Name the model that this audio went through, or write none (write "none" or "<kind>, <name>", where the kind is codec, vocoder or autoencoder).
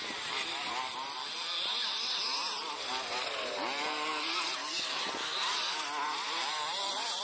none